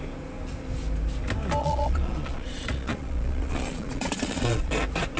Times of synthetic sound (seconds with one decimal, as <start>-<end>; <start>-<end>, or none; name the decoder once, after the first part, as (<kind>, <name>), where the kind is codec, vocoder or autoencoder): 1.6-4.7 (vocoder, Vocos)